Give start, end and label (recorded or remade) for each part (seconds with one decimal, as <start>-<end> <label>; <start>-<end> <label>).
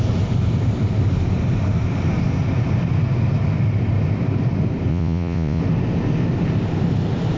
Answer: 0.0-4.9 recorded; 4.9-5.6 remade; 5.6-7.4 recorded